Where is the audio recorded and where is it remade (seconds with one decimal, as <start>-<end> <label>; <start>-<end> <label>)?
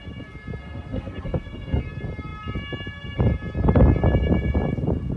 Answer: 0.0-0.6 recorded; 0.6-1.8 remade; 1.8-5.2 recorded